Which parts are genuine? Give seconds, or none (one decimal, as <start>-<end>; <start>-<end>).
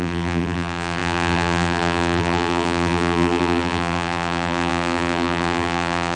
none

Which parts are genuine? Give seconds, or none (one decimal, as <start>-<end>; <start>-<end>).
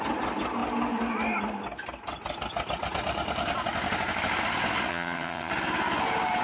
0.0-4.9; 5.5-6.4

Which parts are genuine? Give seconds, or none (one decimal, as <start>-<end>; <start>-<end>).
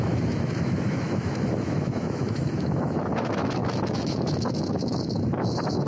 none